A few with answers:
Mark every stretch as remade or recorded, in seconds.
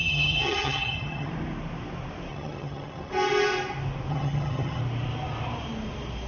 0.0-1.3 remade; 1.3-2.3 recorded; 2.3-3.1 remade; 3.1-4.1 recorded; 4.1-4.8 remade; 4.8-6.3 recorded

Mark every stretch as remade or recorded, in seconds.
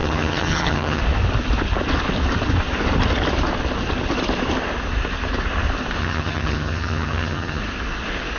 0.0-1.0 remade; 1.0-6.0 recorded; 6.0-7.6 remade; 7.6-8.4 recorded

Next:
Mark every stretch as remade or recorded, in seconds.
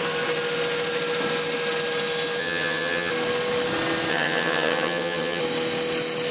0.0-2.4 recorded; 2.4-3.1 remade; 3.1-4.1 recorded; 4.1-5.4 remade; 5.4-6.3 recorded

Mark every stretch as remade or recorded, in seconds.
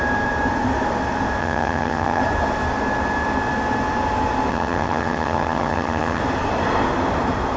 0.0-1.4 recorded; 1.4-2.2 remade; 2.2-4.5 recorded; 4.5-6.2 remade; 6.2-7.6 recorded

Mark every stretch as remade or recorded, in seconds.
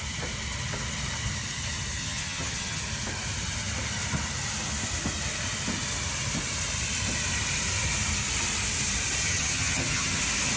0.0-2.0 recorded; 2.0-2.8 remade; 2.8-9.2 recorded; 9.2-10.2 remade; 10.2-10.6 recorded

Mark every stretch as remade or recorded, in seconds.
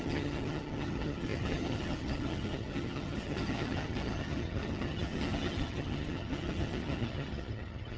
0.0-8.0 remade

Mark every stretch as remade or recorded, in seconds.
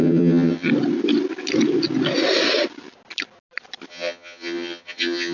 0.0-0.7 remade; 0.7-3.9 recorded; 3.9-5.3 remade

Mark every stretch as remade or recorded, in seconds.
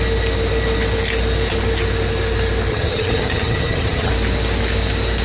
0.0-2.7 recorded; 2.7-4.1 remade; 4.1-5.2 recorded